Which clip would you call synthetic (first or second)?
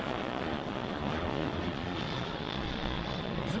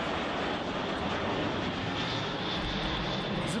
first